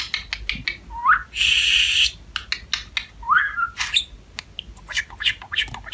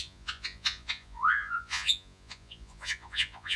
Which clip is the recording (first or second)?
first